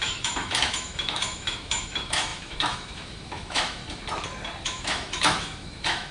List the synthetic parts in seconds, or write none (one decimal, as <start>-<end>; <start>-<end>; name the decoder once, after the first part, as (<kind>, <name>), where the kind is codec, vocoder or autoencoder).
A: 0.0-3.8 (autoencoder, DAC-VAE); 4.6-6.1